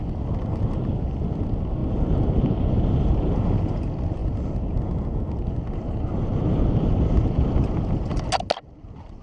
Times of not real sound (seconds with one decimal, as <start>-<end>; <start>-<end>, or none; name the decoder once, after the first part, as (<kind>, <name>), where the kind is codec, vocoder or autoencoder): none

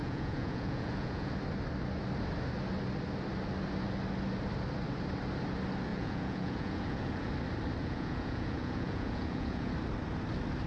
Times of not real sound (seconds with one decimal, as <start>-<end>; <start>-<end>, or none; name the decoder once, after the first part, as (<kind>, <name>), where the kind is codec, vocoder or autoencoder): 0.0-1.3 (vocoder, Vocos); 5.9-7.3; 7.8-9.7

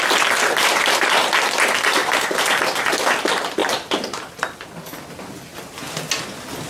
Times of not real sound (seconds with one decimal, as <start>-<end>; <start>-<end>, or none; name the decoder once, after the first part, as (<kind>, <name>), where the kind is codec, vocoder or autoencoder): 0.6-1.3 (vocoder, BigVGAN v2); 2.0-2.6; 3.6-4.3

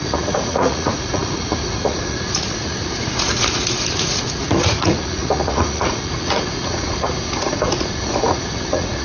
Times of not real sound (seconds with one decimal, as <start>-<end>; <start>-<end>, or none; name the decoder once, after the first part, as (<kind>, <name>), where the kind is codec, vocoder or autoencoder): 0.0-9.0 (vocoder, Vocos)

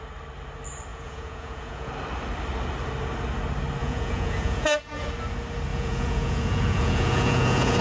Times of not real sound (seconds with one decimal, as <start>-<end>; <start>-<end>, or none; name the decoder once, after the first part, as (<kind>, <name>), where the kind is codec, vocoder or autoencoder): 0.9-1.9 (vocoder, Vocos); 3.8-5.1; 5.7-7.8